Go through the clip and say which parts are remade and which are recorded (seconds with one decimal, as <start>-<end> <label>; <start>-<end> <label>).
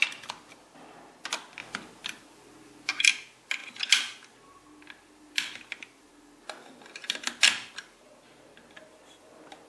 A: 0.0-9.7 recorded